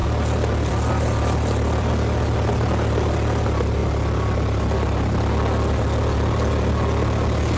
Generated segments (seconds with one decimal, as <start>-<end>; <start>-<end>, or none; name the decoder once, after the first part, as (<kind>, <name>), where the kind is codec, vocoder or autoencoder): 0.0-1.9 (vocoder, BigVGAN v2)